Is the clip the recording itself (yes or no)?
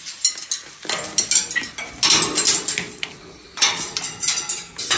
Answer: yes